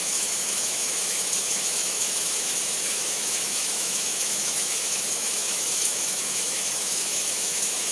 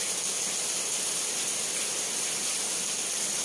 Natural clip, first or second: second